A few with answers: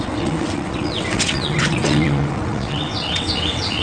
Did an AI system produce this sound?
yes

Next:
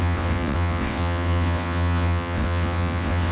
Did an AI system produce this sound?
yes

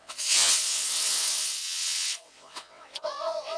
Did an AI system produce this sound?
yes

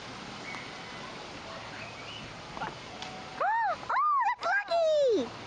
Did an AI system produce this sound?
no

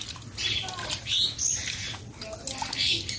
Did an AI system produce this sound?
no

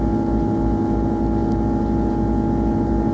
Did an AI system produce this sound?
no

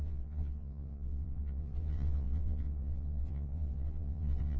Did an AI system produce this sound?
yes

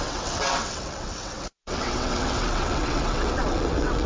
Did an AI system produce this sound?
yes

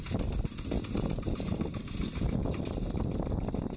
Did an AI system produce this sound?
no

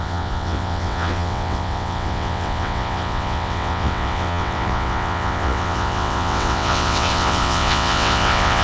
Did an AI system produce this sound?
yes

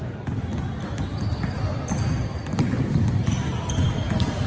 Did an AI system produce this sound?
no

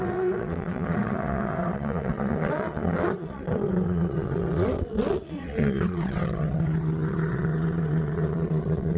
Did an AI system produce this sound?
yes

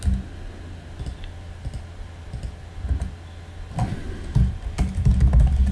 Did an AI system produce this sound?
no